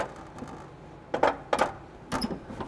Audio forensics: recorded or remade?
recorded